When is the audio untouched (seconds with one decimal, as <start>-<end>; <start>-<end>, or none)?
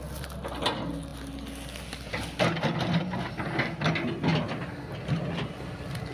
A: 0.0-6.1